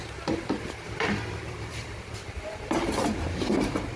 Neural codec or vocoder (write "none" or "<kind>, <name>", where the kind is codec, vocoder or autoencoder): vocoder, BigVGAN v2